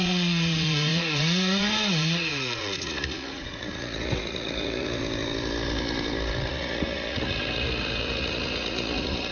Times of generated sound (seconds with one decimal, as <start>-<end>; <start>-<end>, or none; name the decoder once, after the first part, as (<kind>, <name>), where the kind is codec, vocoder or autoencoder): 0.0-5.0 (vocoder, Vocos); 6.5-9.3